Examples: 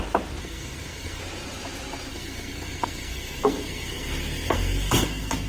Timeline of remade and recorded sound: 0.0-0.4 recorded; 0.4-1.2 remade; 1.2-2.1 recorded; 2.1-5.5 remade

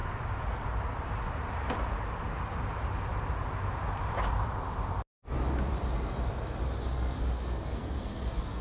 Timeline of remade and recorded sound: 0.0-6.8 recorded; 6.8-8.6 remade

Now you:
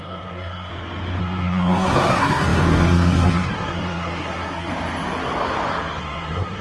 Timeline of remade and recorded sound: 0.0-0.7 remade; 0.7-1.2 recorded; 1.2-4.7 remade; 4.7-6.0 recorded; 6.0-6.6 remade